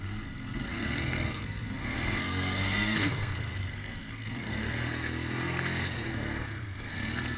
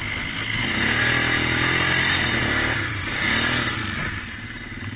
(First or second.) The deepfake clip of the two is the first